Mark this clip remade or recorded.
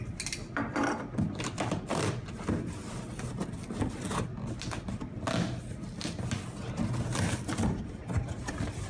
recorded